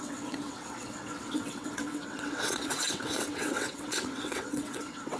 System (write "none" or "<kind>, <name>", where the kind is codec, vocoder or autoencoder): vocoder, WaveNeXt